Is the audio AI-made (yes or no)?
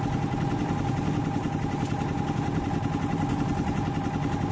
no